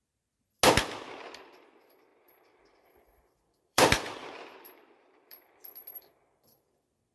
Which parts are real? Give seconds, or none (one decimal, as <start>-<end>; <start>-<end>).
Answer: 0.0-2.1; 5.5-7.1